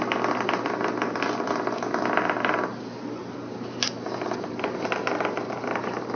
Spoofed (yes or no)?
no